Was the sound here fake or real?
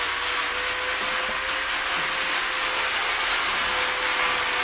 real